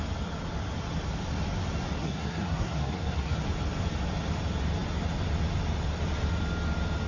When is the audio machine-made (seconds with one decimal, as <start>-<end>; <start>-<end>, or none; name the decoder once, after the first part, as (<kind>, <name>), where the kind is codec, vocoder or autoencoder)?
2.0-3.4 (codec, SNAC)